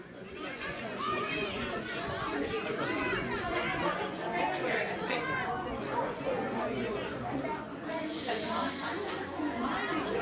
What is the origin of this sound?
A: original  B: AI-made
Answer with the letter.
B